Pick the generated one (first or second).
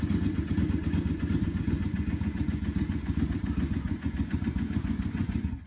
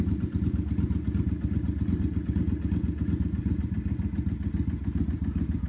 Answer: first